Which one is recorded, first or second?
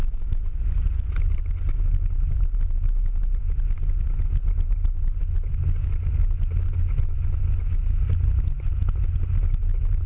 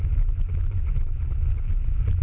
first